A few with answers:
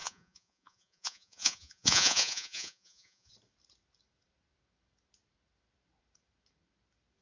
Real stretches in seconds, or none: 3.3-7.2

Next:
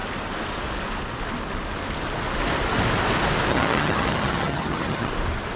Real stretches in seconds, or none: 0.0-3.5; 5.1-5.6

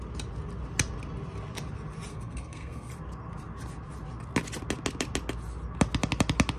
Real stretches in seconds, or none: 0.0-2.1; 2.9-6.6

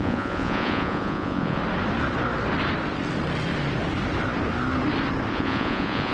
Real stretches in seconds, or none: 1.6-5.3

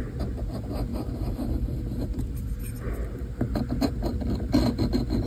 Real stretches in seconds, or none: 0.0-0.9; 2.6-5.3